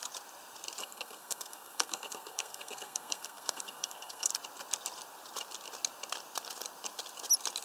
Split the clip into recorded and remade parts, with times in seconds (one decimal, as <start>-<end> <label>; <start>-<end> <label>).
0.0-0.8 recorded; 0.8-4.3 remade; 4.3-7.6 recorded

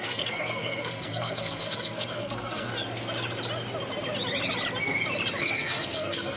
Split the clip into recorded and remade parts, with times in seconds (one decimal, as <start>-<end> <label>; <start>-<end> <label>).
0.0-2.7 remade; 2.7-5.4 recorded; 5.4-6.4 remade

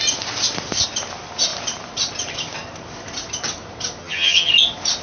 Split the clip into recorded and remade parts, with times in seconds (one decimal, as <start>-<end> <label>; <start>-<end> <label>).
0.0-4.0 recorded; 4.0-4.5 remade; 4.5-5.0 recorded

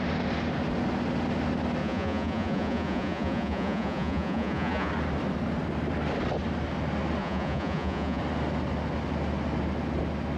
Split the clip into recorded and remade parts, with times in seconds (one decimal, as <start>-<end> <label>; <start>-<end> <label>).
0.0-1.8 recorded; 1.8-4.9 remade; 4.9-7.2 recorded; 7.2-8.2 remade; 8.2-10.4 recorded